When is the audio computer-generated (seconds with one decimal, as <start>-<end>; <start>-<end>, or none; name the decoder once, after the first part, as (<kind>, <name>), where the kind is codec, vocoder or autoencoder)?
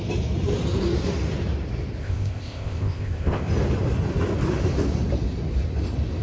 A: 2.0-3.5 (codec, ZipCodec)